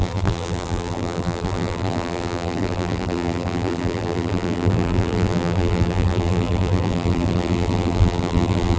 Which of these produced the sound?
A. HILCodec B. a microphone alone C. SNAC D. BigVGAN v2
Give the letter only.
D